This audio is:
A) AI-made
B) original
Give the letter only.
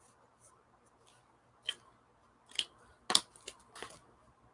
B